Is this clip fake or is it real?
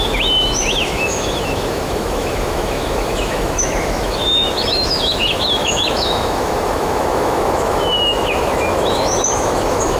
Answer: fake